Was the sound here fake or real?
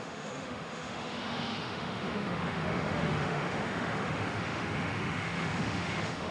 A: fake